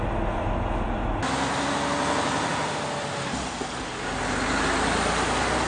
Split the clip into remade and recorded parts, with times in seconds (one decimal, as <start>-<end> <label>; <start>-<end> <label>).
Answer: 0.0-5.7 recorded